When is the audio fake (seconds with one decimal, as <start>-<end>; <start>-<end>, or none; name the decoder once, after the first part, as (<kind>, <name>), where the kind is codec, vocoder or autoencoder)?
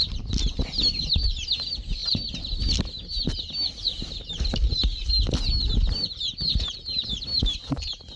none